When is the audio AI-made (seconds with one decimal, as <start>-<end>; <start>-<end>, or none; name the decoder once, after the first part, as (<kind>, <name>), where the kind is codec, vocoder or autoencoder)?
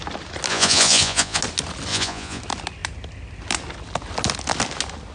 0.5-1.4 (vocoder, Vocos); 1.9-2.4